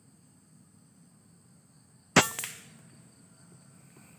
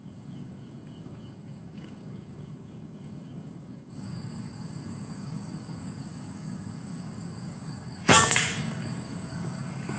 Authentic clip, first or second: first